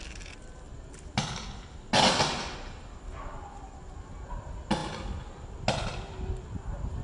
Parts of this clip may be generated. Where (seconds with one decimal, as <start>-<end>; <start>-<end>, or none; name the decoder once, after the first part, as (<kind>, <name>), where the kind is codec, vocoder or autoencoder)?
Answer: 4.8-5.6 (vocoder, BigVGAN v2)